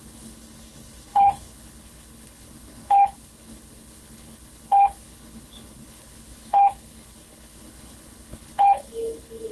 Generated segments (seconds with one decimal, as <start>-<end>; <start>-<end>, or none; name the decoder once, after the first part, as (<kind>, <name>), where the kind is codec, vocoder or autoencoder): 0.0-9.5 (codec, HILCodec)